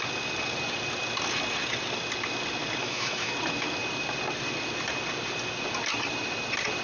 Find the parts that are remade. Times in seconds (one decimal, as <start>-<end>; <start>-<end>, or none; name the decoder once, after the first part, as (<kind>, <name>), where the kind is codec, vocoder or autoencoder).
2.8-3.3 (autoencoder, DAC-VAE)